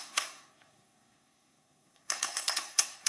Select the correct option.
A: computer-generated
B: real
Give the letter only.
A